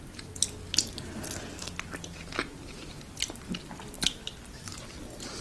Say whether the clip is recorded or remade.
recorded